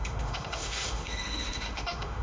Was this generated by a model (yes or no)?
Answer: yes